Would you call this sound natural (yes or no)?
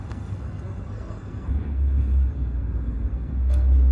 no